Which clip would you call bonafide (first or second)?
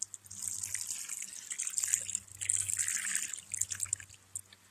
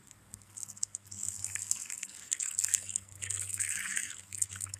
first